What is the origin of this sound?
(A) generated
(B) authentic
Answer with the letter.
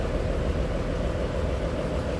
B